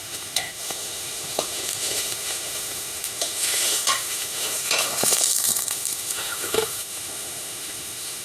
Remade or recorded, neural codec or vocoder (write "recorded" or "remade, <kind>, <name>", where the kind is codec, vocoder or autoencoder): remade, autoencoder, DAC-VAE